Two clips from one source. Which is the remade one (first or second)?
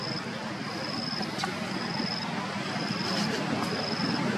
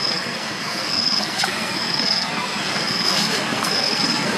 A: second